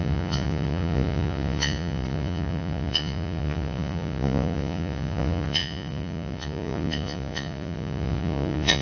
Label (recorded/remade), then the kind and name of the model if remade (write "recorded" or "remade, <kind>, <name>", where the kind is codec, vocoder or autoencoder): remade, vocoder, Vocos